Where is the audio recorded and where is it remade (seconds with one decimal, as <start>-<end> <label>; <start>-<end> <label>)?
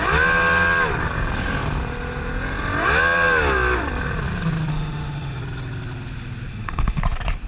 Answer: 0.0-4.7 recorded; 4.7-5.4 remade; 5.4-6.5 recorded; 6.5-7.0 remade; 7.0-7.5 recorded